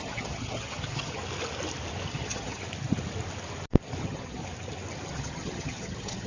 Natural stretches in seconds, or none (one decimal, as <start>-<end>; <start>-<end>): 1.2-2.1; 2.6-4.0; 4.4-5.1